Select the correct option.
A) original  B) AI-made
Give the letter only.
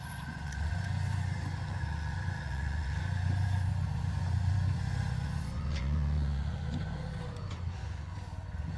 B